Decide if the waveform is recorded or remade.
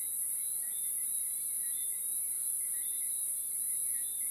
recorded